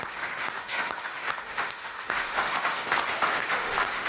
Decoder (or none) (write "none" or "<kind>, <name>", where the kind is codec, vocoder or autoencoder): autoencoder, DAC-VAE